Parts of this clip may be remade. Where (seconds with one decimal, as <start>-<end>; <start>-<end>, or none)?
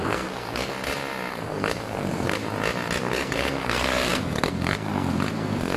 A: 0.0-0.7; 1.3-2.4; 3.0-5.8